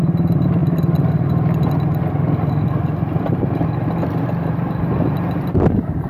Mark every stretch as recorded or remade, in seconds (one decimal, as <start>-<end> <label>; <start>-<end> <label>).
0.0-6.1 recorded

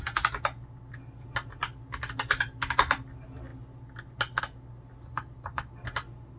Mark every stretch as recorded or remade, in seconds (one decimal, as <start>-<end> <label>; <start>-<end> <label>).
0.0-6.4 recorded

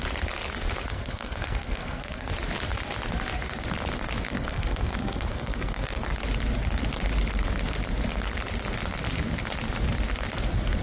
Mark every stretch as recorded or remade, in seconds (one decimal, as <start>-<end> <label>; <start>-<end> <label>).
0.0-0.9 recorded; 0.9-2.3 remade; 2.3-4.3 recorded; 4.3-6.1 remade; 6.1-10.8 recorded

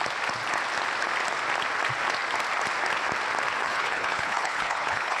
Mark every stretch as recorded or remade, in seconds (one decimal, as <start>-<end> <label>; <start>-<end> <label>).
0.0-3.6 recorded; 3.6-5.2 remade

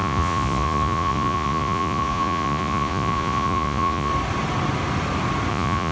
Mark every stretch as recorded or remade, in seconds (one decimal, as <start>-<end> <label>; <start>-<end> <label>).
0.0-4.1 remade; 4.1-5.5 recorded; 5.5-5.9 remade

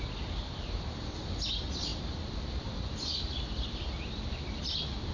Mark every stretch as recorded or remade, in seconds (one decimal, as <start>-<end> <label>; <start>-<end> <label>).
0.0-5.1 recorded